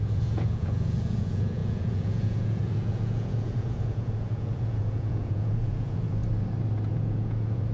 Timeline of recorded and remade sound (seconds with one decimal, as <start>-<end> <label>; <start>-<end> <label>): 0.0-6.2 remade; 6.2-6.9 recorded; 6.9-7.7 remade